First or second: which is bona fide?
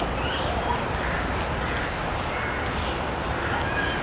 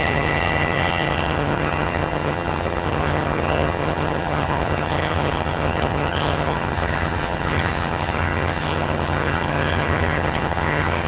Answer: first